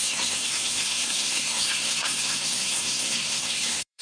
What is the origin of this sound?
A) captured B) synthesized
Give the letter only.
B